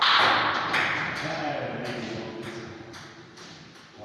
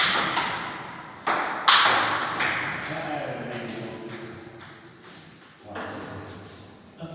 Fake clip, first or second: first